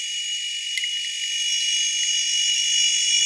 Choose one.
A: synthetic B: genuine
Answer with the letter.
B